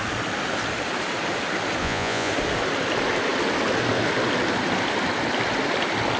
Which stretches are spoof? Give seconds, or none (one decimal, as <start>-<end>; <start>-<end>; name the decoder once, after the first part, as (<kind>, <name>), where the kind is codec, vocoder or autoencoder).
1.8-2.3 (vocoder, Vocos)

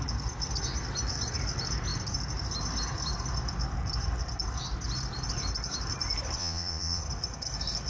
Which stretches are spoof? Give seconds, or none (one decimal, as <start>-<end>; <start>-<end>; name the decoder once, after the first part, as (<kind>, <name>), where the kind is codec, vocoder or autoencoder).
6.4-7.0 (vocoder, Vocos)